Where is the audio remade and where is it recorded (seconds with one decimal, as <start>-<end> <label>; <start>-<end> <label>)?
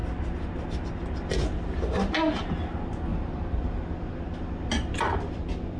0.0-3.1 recorded; 3.1-3.8 remade; 3.8-5.8 recorded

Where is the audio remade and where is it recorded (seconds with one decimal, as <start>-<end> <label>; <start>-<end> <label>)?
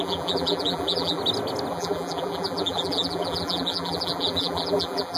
0.0-1.2 remade; 1.2-1.7 recorded; 1.7-5.2 remade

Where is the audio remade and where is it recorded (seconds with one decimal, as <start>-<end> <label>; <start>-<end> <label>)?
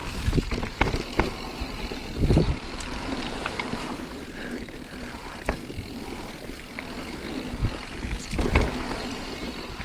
0.0-1.5 recorded; 1.5-5.6 remade; 5.6-9.0 recorded; 9.0-9.8 remade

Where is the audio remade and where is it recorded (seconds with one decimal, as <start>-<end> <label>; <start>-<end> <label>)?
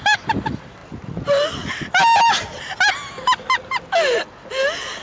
0.0-5.0 recorded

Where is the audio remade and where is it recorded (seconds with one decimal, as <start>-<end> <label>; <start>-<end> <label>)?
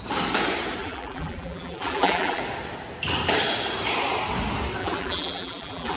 0.0-0.8 recorded; 0.8-2.4 remade; 2.4-4.8 recorded; 4.8-6.0 remade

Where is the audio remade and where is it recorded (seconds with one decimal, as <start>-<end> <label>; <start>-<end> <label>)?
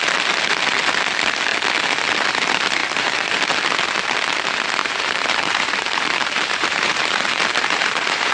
0.0-2.8 recorded; 2.8-3.4 remade; 3.4-4.8 recorded; 4.8-8.3 remade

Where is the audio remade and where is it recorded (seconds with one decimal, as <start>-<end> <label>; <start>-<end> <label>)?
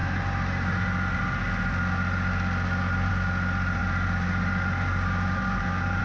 0.0-3.8 recorded; 3.8-6.0 remade